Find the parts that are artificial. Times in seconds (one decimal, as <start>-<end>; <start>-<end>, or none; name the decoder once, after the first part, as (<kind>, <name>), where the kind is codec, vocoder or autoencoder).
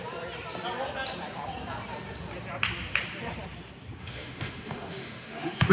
4.0-5.7 (autoencoder, DAC-VAE)